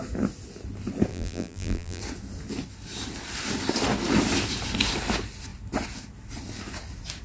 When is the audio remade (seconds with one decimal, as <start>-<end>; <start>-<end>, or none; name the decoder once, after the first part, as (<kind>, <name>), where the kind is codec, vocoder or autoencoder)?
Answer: 1.1-2.0 (vocoder, BigVGAN v2)